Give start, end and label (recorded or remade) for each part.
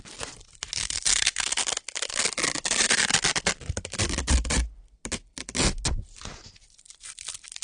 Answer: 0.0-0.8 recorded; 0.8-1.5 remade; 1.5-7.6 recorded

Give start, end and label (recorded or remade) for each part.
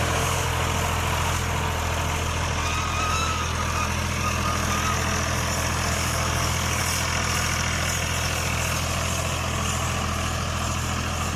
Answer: 0.0-0.5 remade; 0.5-3.1 recorded; 3.1-3.5 remade; 3.5-5.9 recorded; 5.9-6.8 remade; 6.8-11.4 recorded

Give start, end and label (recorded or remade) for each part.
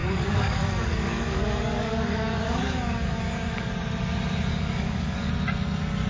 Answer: 0.0-3.7 remade; 3.7-4.5 recorded; 4.5-5.3 remade; 5.3-6.1 recorded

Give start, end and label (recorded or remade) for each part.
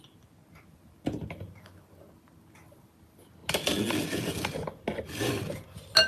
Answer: 0.0-6.1 recorded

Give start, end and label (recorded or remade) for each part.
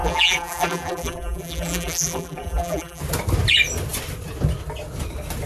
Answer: 0.0-3.0 remade; 3.0-5.5 recorded